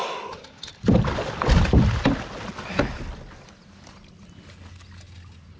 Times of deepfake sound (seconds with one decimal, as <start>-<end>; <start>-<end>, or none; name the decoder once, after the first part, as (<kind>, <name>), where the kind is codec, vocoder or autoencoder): none